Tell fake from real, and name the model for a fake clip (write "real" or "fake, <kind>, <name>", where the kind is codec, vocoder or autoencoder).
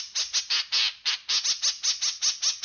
real